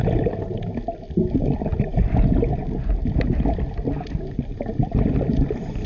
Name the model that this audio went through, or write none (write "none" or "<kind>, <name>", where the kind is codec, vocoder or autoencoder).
none